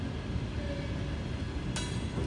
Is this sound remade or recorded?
recorded